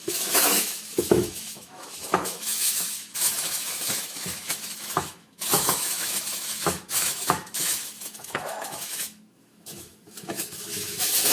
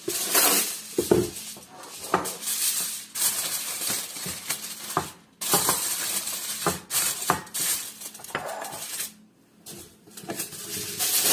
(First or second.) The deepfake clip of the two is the first